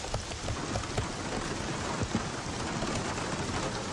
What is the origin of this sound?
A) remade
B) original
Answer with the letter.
B